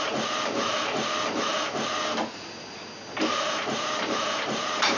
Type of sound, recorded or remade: recorded